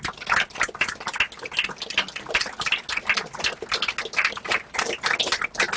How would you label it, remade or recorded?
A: recorded